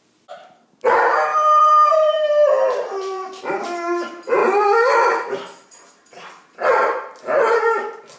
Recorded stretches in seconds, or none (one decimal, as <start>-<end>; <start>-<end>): 0.0-1.3; 3.4-8.2